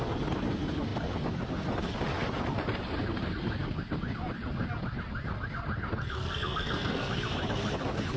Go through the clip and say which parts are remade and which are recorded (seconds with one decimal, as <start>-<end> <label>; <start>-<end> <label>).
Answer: 0.0-6.2 recorded; 6.2-7.1 remade; 7.1-8.2 recorded